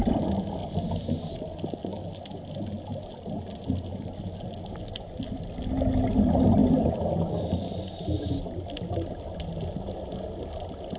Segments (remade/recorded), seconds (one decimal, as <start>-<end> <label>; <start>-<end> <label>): 0.0-11.0 recorded